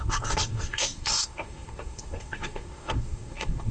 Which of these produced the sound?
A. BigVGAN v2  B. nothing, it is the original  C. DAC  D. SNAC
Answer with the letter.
D